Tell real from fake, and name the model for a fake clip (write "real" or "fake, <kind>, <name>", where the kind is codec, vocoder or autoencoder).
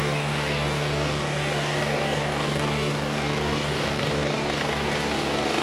fake, codec, DAC